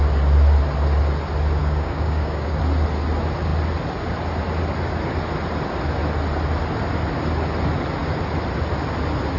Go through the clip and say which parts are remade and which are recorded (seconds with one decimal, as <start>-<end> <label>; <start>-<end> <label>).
0.0-1.6 recorded; 1.6-2.6 remade; 2.6-9.4 recorded